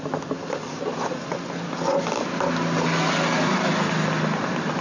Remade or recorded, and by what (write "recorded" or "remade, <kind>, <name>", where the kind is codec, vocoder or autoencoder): recorded